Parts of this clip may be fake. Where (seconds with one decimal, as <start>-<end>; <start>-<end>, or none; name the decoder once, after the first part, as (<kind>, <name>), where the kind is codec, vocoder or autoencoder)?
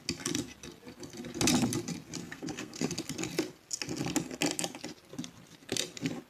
2.2-2.9 (codec, SNAC)